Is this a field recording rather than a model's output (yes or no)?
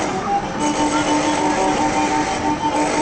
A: yes